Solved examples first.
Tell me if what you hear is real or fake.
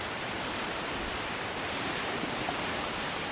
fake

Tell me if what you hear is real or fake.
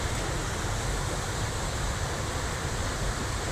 real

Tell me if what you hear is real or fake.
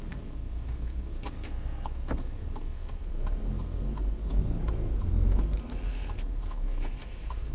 fake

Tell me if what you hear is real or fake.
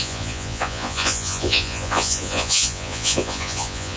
fake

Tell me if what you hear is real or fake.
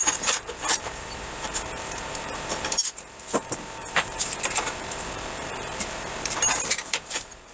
fake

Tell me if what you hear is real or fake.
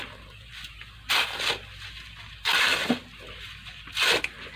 real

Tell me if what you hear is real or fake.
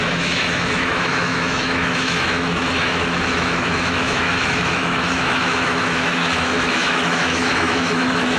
fake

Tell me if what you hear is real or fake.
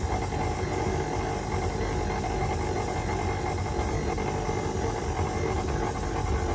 real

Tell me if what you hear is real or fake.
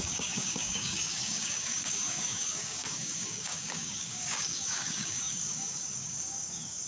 fake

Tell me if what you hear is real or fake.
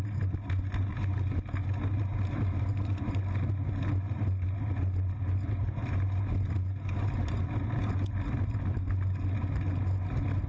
real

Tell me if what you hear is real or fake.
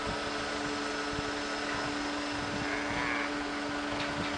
real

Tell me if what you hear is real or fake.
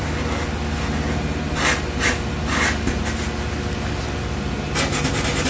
real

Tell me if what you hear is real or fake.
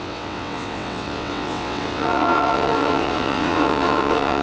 fake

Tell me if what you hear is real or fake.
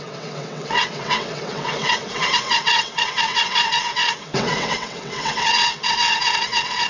fake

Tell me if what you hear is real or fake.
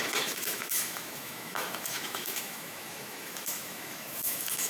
fake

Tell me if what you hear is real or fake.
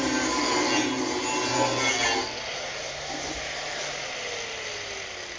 real